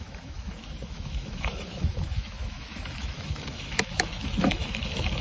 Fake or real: fake